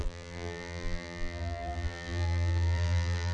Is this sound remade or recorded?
remade